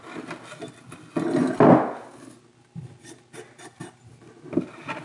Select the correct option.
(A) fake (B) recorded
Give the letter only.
B